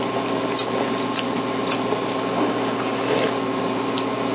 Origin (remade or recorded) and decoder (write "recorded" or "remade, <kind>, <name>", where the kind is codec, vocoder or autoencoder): recorded